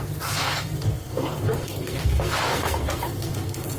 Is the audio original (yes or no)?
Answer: no